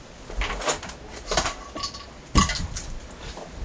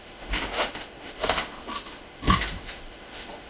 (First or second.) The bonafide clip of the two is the first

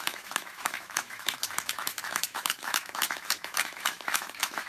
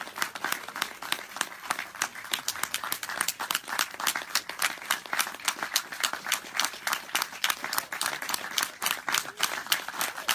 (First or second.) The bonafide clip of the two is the second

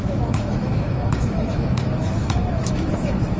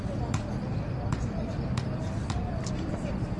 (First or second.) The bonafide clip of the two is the second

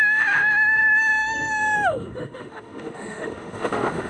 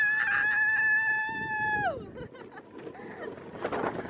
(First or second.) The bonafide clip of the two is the second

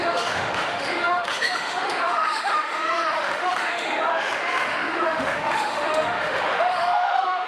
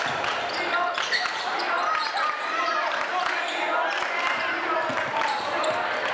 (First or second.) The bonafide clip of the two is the second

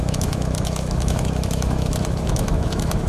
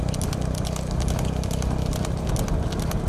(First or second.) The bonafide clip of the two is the second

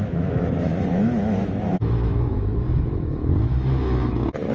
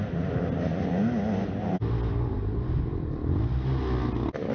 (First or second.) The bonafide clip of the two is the second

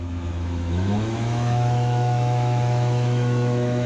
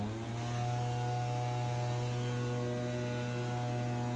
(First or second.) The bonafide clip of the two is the second